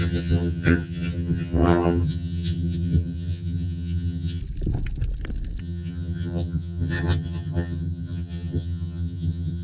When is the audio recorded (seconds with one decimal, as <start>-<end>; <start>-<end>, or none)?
4.4-5.6